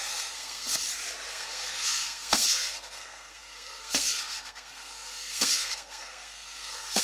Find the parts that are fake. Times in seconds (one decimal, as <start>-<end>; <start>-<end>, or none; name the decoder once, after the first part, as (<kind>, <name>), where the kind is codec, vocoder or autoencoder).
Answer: 0.0-0.7 (codec, SNAC); 1.3-7.0